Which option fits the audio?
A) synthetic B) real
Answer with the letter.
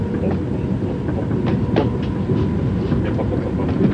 B